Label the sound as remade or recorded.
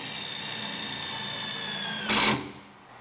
recorded